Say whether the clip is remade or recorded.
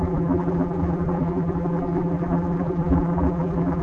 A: remade